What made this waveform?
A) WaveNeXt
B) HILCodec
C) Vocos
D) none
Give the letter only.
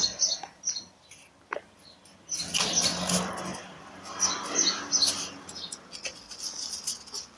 D